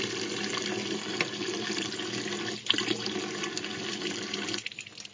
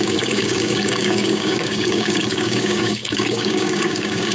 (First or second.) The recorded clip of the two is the first